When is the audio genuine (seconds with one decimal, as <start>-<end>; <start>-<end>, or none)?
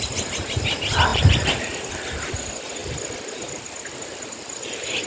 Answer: 0.0-1.1; 1.9-5.1